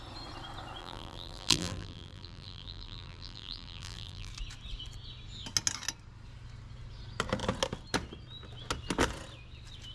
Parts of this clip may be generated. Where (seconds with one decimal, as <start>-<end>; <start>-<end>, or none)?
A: 0.8-4.3